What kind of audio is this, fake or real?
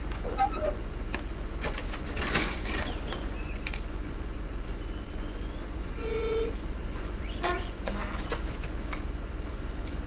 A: fake